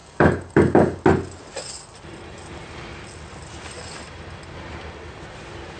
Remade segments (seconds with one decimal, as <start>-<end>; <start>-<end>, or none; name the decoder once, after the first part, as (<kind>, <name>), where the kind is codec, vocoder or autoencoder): 0.0-1.0 (codec, DAC)